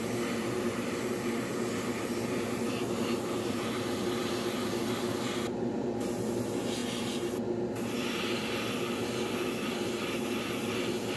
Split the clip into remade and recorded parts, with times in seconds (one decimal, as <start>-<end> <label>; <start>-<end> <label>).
0.0-11.2 recorded